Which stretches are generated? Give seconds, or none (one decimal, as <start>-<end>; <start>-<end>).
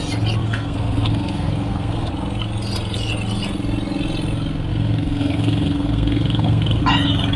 0.4-2.1; 4.7-6.8